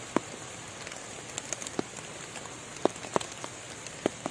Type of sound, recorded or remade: recorded